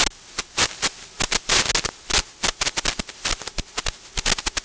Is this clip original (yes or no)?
yes